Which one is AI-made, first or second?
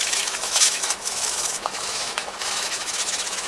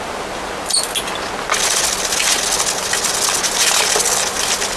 first